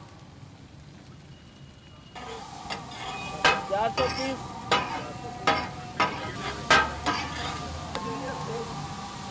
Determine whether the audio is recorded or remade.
recorded